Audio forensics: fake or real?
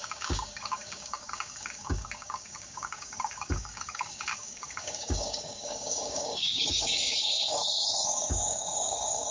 fake